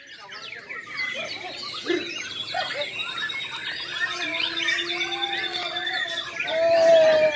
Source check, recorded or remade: recorded